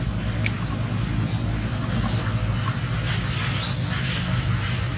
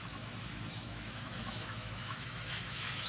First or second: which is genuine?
first